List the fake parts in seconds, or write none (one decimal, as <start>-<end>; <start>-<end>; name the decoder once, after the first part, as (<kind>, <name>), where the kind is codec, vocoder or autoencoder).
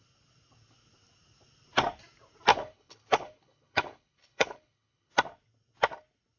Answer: 2.5-5.1 (codec, HILCodec)